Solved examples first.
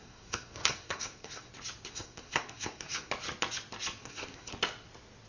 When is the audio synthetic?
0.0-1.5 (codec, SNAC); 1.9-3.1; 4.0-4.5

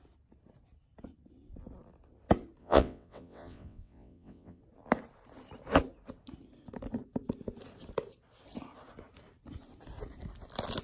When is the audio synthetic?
2.6-4.6 (vocoder, WaveNeXt)

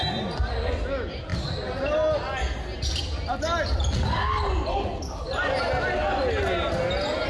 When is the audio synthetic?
none

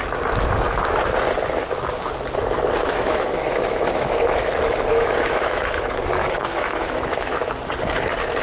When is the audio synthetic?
2.8-4.5 (autoencoder, DAC-VAE); 4.9-5.8; 6.2-7.4

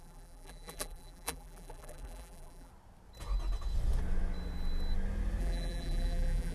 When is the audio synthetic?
0.0-2.7 (vocoder, BigVGAN v2); 5.4-6.5

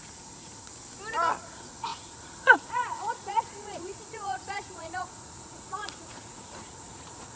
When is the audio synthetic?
0.0-0.7 (vocoder, Vocos); 1.4-7.4

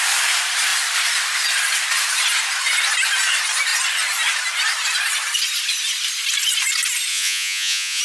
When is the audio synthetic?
7.1-8.0 (vocoder, Vocos)

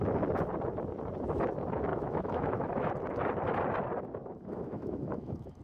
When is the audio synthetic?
1.9-2.9 (autoencoder, DAC-VAE); 4.2-5.6